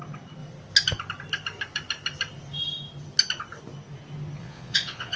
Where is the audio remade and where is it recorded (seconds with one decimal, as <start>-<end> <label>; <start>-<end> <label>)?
0.0-4.4 recorded; 4.4-5.2 remade